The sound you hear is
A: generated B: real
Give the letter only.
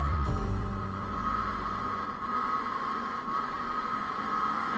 A